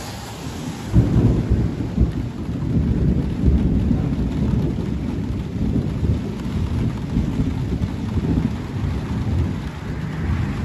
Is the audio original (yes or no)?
yes